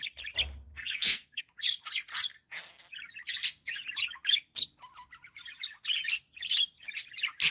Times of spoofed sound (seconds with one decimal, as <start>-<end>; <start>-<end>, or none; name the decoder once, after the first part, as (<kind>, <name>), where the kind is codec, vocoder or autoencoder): 0.7-1.4 (codec, SNAC)